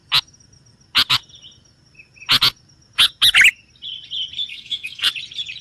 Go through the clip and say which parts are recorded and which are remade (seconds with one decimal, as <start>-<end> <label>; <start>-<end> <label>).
0.0-4.5 recorded; 4.5-5.1 remade; 5.1-5.6 recorded